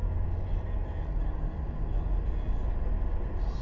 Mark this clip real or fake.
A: real